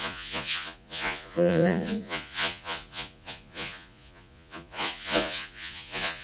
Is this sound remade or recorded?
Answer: remade